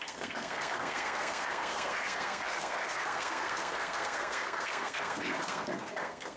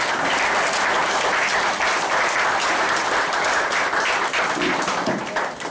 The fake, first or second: first